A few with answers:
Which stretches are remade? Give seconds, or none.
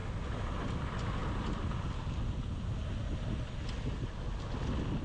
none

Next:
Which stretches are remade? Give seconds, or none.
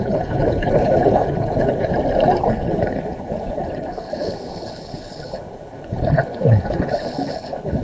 0.0-1.9 (codec, HILCodec); 2.4-7.8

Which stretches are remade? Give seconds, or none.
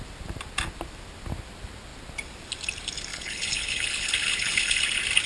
3.1-4.8 (codec, HILCodec)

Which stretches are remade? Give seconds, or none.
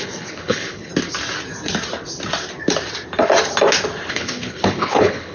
0.0-0.9 (codec, HILCodec); 4.1-5.3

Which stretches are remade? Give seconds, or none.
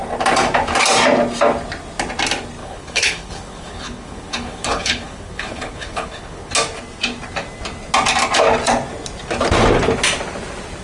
2.6-6.5 (codec, HILCodec)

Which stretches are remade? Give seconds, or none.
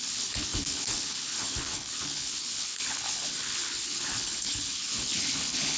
0.0-5.8 (codec, HILCodec)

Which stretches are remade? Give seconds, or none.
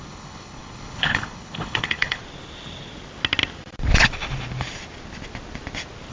0.0-2.2 (codec, HILCodec)